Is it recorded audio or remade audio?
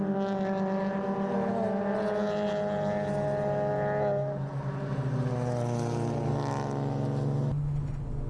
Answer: recorded